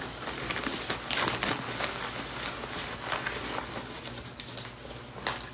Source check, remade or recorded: recorded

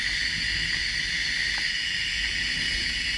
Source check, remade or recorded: recorded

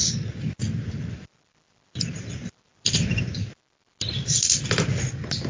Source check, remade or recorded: recorded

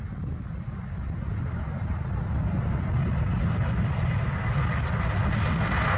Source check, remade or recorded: recorded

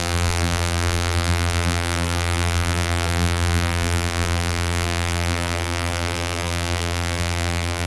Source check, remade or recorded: remade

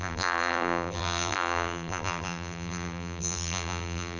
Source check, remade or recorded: remade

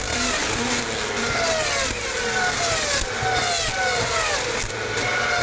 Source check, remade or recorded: recorded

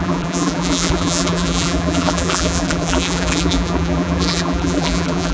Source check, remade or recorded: remade